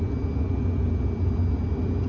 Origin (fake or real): real